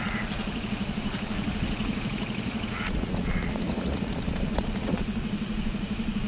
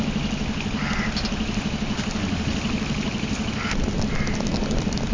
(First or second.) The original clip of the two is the second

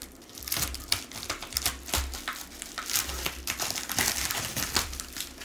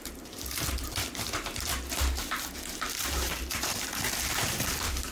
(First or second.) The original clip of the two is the first